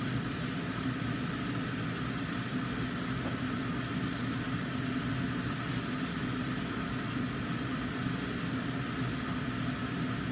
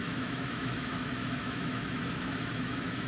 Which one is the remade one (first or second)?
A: second